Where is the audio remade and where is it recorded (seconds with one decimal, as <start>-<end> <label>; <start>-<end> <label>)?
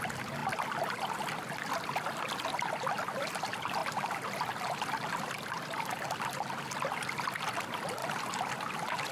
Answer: 0.0-9.1 recorded